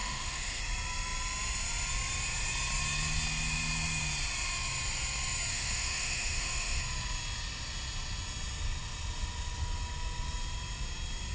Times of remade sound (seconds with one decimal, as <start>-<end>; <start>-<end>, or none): 0.0-0.6; 5.5-6.8